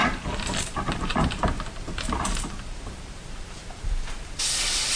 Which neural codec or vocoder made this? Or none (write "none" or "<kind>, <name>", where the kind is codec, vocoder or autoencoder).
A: vocoder, BigVGAN v2